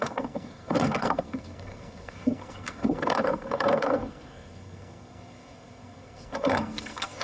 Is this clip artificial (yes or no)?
yes